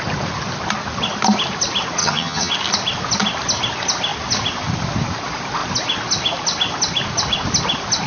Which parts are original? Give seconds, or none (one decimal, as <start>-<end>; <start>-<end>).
0.0-2.0; 2.5-8.1